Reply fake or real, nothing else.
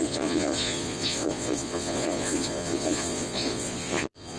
fake